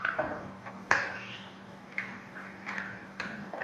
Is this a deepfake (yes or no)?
yes